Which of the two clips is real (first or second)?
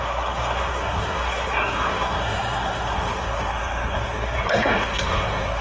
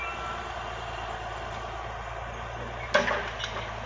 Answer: second